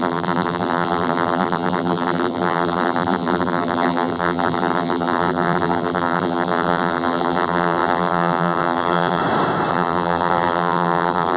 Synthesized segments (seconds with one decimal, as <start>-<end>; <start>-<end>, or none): 0.0-9.2; 9.7-11.4

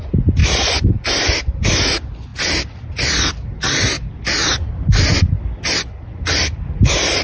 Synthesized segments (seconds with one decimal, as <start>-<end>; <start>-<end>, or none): none